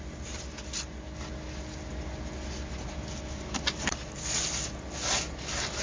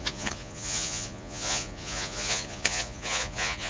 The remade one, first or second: second